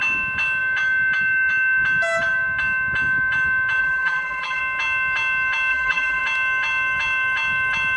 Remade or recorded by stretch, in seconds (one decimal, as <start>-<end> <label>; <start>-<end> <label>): 0.0-3.8 recorded; 3.8-4.6 remade; 4.6-5.7 recorded; 5.7-6.2 remade; 6.2-8.0 recorded